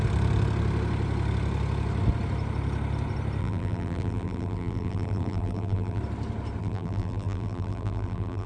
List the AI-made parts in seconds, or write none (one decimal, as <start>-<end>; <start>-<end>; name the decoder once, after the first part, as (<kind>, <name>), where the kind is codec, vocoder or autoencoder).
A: 3.4-6.0 (vocoder, BigVGAN v2); 6.6-8.5